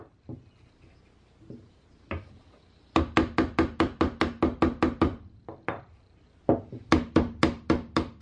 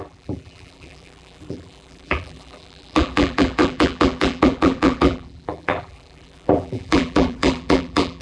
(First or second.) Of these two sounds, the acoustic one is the first